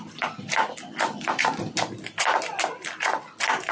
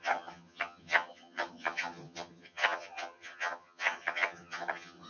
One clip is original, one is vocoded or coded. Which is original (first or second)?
first